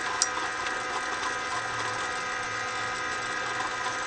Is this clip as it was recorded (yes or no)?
yes